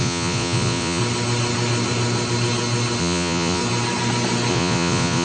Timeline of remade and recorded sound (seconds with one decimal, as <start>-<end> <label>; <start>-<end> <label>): 0.0-1.0 remade; 1.0-3.0 recorded; 3.0-3.6 remade; 3.6-4.5 recorded; 4.5-5.2 remade